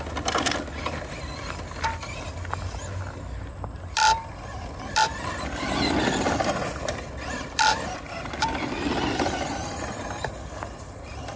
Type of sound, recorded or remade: recorded